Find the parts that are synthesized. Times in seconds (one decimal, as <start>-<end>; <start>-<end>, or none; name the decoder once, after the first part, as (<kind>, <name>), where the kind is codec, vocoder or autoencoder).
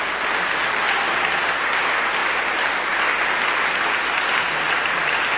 none